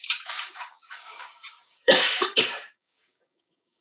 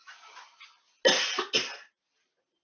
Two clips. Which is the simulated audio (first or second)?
first